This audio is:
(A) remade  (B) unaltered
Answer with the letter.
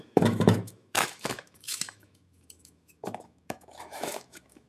A